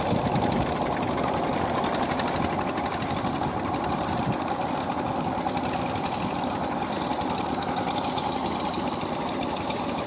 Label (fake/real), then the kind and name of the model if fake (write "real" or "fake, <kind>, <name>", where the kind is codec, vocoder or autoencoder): real